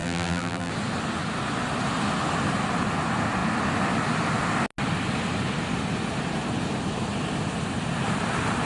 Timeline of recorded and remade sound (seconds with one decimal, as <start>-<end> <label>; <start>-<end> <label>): 0.0-0.7 remade; 0.7-8.7 recorded